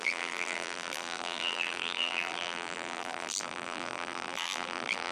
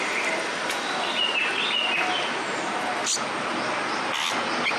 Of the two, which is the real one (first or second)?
second